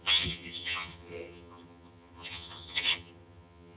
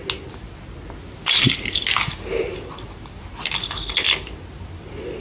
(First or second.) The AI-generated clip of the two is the first